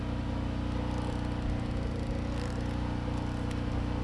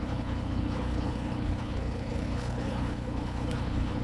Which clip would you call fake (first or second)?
second